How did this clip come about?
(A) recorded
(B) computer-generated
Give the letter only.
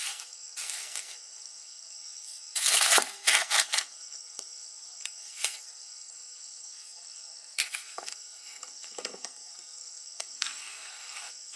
B